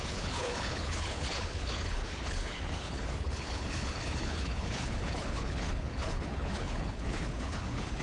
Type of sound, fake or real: fake